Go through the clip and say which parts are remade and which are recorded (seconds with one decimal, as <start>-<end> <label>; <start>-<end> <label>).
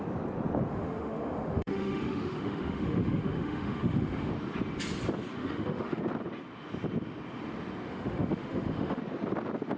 0.0-0.7 recorded; 0.7-4.3 remade; 4.3-5.4 recorded; 5.4-6.0 remade; 6.0-7.9 recorded; 7.9-9.0 remade; 9.0-9.8 recorded